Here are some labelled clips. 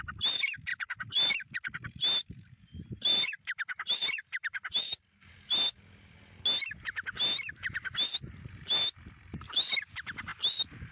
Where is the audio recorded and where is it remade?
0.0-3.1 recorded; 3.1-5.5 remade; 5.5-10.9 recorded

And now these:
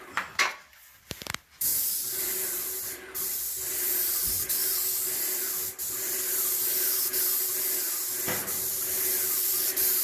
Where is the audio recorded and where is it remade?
0.0-1.7 remade; 1.7-2.2 recorded; 2.2-4.6 remade; 4.6-8.9 recorded; 8.9-10.0 remade

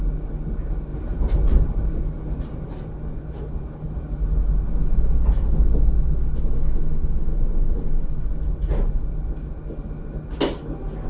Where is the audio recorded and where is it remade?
0.0-0.9 recorded; 0.9-2.9 remade; 2.9-7.3 recorded; 7.3-8.1 remade; 8.1-11.1 recorded

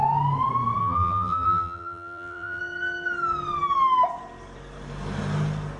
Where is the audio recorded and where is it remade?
0.0-0.8 recorded; 0.8-2.6 remade; 2.6-5.8 recorded

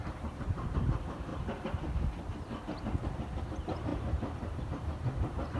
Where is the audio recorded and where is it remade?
0.0-1.3 remade; 1.3-3.4 recorded; 3.4-5.6 remade